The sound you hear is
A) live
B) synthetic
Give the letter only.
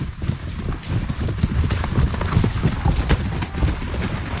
A